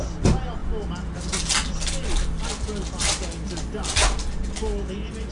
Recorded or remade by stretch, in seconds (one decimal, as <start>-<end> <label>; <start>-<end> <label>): 0.0-5.3 recorded